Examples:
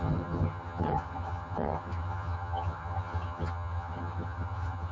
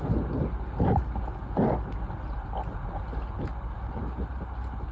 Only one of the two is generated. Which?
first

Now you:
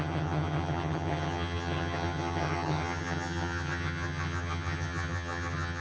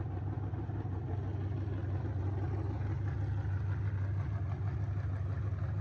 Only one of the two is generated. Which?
first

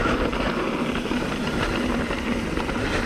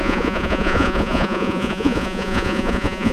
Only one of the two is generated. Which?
second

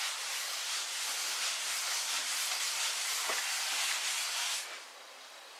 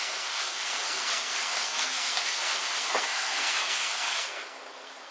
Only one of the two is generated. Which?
second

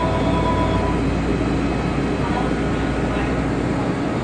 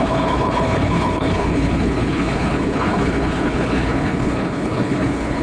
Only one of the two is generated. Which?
second